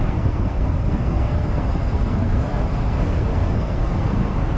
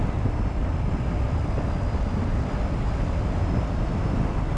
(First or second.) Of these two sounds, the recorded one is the second